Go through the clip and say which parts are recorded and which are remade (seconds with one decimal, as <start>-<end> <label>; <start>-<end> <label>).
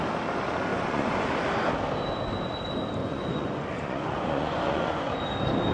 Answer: 0.0-0.7 recorded; 0.7-1.3 remade; 1.3-3.0 recorded; 3.0-5.2 remade; 5.2-5.7 recorded